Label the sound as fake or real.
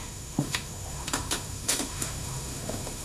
fake